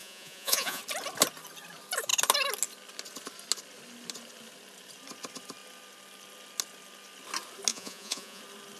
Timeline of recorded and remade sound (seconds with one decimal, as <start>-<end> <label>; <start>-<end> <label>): 0.0-0.8 remade; 0.8-7.7 recorded; 7.7-8.4 remade; 8.4-8.8 recorded